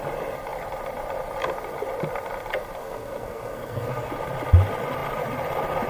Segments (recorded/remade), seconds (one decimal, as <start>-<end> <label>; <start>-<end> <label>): 0.0-2.8 recorded; 2.8-4.1 remade; 4.1-5.9 recorded